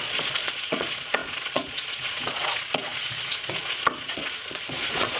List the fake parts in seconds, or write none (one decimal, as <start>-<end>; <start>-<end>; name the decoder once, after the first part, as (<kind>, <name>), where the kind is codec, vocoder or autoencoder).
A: 0.0-5.2 (vocoder, Vocos)